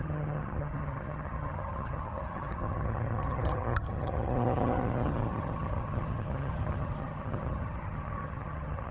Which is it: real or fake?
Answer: fake